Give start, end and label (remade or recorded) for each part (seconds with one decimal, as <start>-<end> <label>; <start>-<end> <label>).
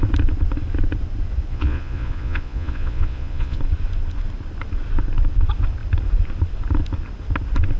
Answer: 0.0-1.5 recorded; 1.5-3.6 remade; 3.6-7.8 recorded